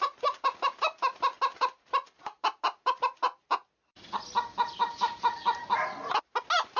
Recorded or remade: recorded